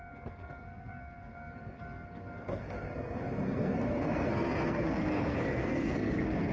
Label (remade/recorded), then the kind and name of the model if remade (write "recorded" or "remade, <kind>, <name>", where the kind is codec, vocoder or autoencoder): remade, codec, SNAC